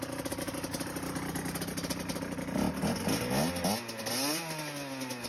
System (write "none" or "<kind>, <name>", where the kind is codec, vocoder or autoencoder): none